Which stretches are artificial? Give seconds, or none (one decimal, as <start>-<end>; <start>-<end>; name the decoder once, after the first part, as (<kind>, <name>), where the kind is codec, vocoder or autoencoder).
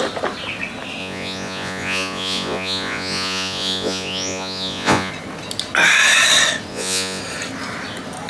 1.0-5.1 (vocoder, Vocos); 6.7-7.2